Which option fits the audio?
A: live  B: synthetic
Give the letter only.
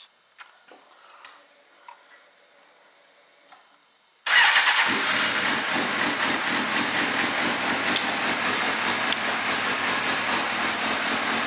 A